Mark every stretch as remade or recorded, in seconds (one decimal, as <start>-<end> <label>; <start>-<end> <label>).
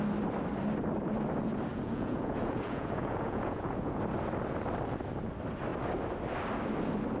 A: 0.0-1.7 recorded; 1.7-4.0 remade; 4.0-7.2 recorded